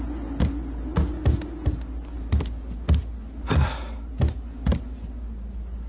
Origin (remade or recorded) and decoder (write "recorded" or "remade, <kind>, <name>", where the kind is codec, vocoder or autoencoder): recorded